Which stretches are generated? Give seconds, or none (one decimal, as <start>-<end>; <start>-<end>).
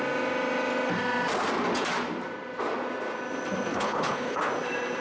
3.7-4.4